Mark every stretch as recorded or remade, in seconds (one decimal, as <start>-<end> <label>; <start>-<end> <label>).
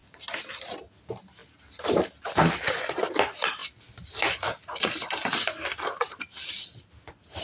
0.0-7.4 recorded